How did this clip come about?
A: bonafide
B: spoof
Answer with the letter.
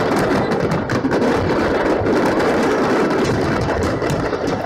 A